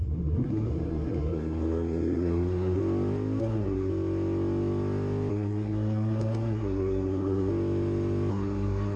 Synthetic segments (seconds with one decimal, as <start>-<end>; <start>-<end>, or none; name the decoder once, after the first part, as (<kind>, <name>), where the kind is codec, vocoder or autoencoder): 0.0-2.8 (codec, SNAC); 3.4-3.9; 5.3-7.5; 8.3-9.0